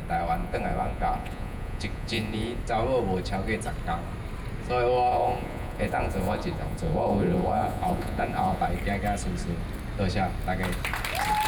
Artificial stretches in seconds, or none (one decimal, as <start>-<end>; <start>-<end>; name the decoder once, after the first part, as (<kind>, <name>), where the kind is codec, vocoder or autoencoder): 0.4-2.6 (vocoder, Vocos); 5.1-8.6